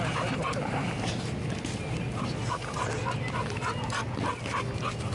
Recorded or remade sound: recorded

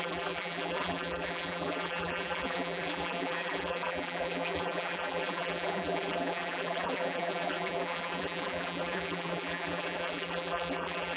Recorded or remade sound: remade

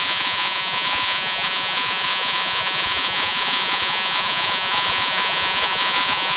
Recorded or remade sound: remade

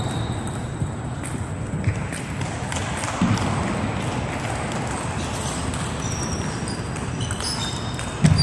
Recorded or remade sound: recorded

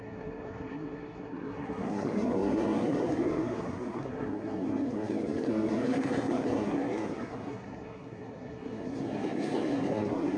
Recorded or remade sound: remade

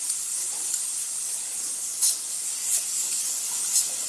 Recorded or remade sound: recorded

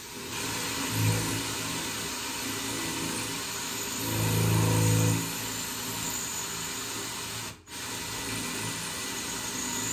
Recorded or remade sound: recorded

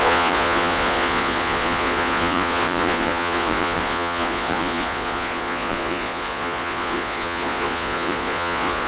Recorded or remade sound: remade